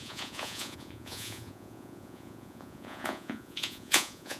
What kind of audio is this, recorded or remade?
remade